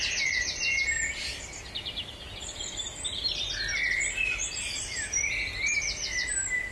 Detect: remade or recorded remade